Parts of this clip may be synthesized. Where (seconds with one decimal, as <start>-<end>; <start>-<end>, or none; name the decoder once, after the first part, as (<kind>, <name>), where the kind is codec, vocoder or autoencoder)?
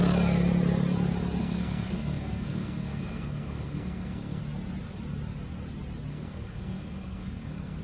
1.4-4.4 (codec, SNAC); 6.1-7.8